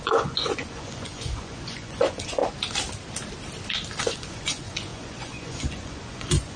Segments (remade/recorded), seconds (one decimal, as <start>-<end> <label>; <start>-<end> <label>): 0.0-2.4 remade; 2.4-4.0 recorded; 4.0-6.6 remade